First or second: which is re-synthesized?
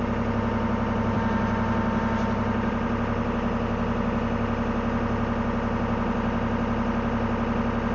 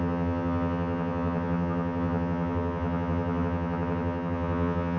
second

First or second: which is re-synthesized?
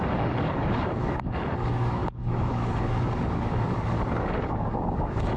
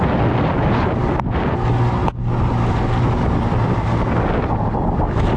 first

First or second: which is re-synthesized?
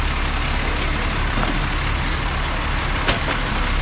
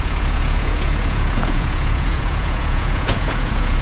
second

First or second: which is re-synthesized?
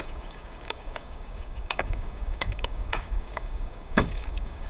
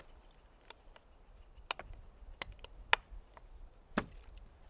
first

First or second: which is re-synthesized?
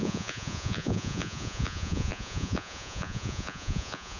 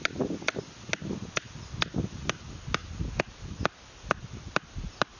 first